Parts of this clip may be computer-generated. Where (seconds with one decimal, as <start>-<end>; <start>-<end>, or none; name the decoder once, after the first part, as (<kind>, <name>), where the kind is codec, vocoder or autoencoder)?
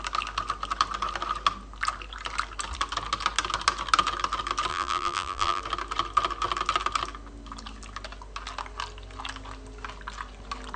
4.7-5.6 (vocoder, BigVGAN v2)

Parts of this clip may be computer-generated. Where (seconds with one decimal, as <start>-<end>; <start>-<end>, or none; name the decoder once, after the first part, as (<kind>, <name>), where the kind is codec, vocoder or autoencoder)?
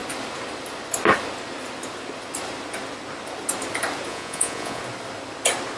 4.1-4.8 (vocoder, Vocos)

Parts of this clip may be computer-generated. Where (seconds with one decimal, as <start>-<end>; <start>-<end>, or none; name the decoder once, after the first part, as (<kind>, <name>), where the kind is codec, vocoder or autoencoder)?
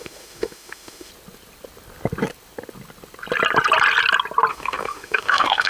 0.0-1.1 (autoencoder, DAC-VAE); 4.5-5.7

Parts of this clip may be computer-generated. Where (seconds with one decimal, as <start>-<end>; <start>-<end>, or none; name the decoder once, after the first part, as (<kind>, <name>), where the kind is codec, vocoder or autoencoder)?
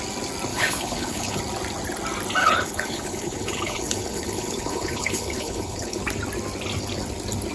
0.5-1.4 (codec, HILCodec); 2.4-6.0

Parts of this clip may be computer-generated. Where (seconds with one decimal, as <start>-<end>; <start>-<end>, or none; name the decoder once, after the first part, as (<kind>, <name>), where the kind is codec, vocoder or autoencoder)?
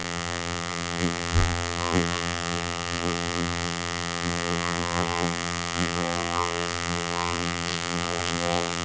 0.0-8.8 (vocoder, BigVGAN v2)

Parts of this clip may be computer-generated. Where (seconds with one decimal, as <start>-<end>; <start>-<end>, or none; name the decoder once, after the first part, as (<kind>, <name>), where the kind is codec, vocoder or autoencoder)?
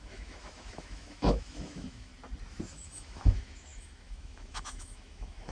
0.0-2.1 (autoencoder, DAC-VAE); 2.7-5.5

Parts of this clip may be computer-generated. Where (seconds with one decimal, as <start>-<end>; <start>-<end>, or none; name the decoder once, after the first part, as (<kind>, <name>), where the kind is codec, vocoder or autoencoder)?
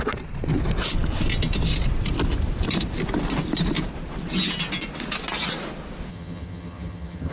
6.1-7.3 (vocoder, HiFi-GAN)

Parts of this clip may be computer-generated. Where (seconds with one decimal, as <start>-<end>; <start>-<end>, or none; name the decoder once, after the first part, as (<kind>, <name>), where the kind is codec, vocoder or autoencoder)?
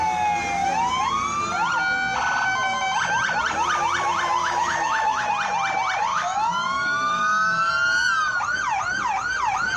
4.4-5.3 (autoencoder, DAC-VAE); 6.1-7.7